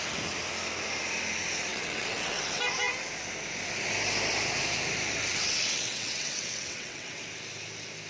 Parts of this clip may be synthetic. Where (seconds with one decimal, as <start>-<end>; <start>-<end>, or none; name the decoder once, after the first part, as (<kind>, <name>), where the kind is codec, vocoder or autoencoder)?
1.7-2.6 (vocoder, WaveNeXt); 5.3-7.2